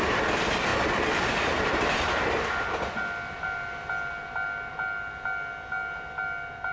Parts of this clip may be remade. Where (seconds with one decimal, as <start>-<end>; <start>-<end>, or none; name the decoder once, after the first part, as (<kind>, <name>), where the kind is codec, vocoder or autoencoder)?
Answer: none

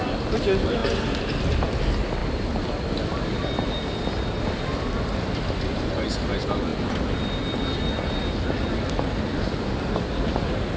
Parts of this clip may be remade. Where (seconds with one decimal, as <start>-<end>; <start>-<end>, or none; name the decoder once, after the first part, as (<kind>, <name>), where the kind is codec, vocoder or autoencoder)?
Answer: none

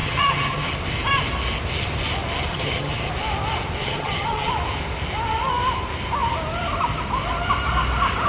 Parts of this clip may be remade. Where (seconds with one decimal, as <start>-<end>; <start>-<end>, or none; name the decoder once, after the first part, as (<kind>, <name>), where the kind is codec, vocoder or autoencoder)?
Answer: 0.0-0.7 (vocoder, HiFi-GAN); 2.5-3.1; 3.8-4.5

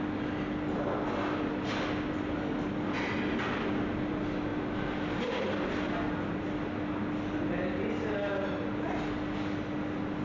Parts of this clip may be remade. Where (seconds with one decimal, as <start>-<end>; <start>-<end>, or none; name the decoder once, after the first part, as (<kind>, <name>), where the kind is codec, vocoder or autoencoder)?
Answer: none

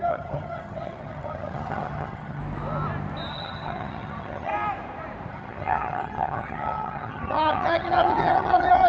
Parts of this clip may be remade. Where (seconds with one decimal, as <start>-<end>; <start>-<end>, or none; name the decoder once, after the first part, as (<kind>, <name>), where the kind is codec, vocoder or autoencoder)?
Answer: 0.0-2.4 (vocoder, HiFi-GAN); 3.3-4.5; 5.3-8.9

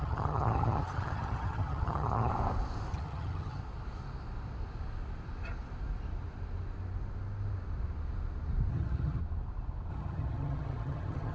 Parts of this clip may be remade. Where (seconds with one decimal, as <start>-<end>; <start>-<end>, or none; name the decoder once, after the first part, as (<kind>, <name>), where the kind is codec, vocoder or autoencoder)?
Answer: 0.0-2.3 (vocoder, HiFi-GAN); 2.9-3.6; 8.7-9.2; 9.9-11.3

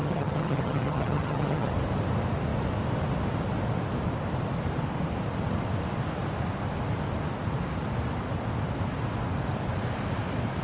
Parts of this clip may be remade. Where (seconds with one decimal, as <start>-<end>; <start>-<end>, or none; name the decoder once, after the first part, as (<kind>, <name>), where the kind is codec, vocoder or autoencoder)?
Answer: 0.0-1.7 (vocoder, HiFi-GAN)

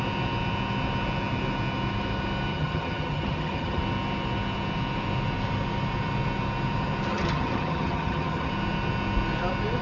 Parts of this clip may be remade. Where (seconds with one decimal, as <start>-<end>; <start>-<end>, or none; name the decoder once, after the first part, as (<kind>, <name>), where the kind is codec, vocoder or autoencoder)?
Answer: 2.5-3.8 (vocoder, HiFi-GAN); 7.1-8.5